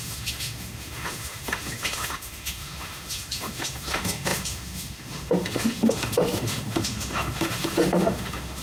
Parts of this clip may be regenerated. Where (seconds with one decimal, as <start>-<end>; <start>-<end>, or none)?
0.0-8.6